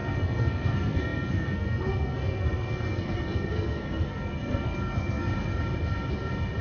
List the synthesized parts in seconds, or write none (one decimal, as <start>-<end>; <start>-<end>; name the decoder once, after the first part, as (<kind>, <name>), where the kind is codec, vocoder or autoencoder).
0.0-5.3 (codec, SNAC)